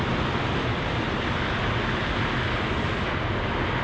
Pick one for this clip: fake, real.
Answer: real